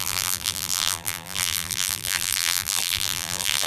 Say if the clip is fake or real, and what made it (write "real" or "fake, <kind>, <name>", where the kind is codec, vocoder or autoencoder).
fake, vocoder, BigVGAN v2